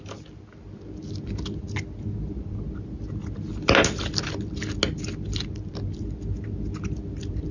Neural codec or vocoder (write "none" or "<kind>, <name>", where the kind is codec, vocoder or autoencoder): none